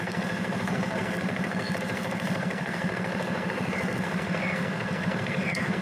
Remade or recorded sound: remade